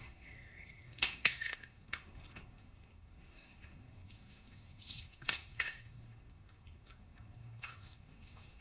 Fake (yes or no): yes